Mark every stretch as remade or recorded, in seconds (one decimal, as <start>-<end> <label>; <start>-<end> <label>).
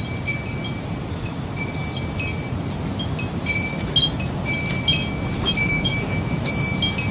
0.0-5.6 recorded; 5.6-6.5 remade; 6.5-7.1 recorded